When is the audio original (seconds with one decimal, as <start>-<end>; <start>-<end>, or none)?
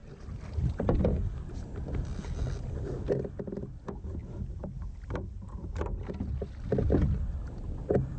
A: 0.0-8.2